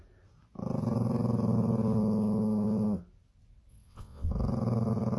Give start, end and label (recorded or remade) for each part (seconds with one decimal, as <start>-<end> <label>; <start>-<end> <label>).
0.0-3.7 recorded; 3.7-4.3 remade; 4.3-5.2 recorded